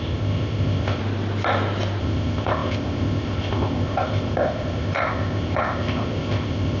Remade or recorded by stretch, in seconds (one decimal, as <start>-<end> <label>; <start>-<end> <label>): 0.0-1.0 remade; 1.0-2.0 recorded; 2.0-6.8 remade